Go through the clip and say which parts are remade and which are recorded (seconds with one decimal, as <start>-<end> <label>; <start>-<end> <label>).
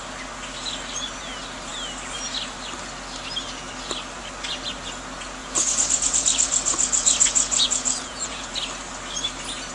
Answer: 0.0-5.4 recorded; 5.4-8.5 remade; 8.5-9.7 recorded